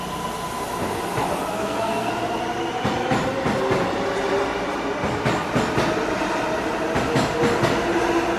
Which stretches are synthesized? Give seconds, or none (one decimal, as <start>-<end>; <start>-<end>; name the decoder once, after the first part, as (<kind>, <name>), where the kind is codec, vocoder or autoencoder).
1.5-2.1 (codec, SNAC)